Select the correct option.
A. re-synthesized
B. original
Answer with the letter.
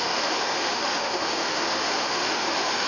A